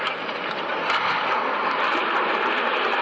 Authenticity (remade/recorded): recorded